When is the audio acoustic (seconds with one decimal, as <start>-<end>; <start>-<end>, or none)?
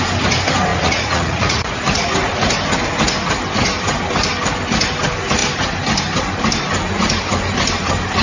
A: 0.0-0.7; 2.1-8.2